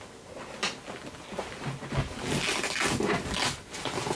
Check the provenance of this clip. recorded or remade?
recorded